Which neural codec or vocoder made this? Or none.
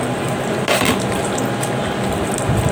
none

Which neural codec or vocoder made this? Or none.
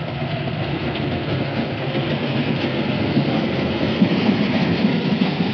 codec, SNAC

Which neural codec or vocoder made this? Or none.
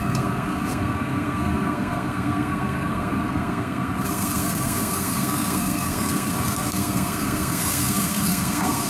codec, SNAC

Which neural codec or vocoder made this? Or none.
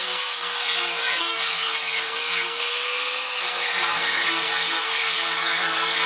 codec, SNAC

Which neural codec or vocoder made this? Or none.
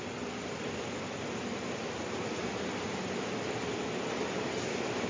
none